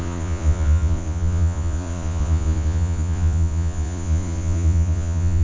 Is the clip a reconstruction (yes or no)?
yes